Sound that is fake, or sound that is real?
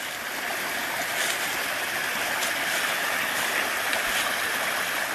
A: real